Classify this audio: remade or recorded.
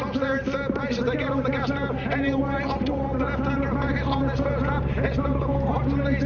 recorded